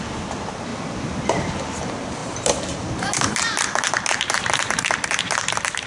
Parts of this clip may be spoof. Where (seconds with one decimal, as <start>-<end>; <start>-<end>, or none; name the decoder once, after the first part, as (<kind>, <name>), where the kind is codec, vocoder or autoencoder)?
0.0-0.7 (vocoder, BigVGAN v2); 1.3-5.9